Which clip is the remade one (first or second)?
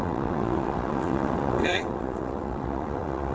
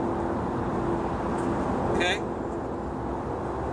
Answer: first